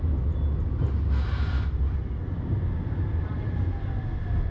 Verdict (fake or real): real